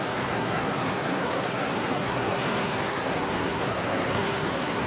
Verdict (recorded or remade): remade